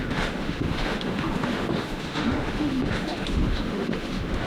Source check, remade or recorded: remade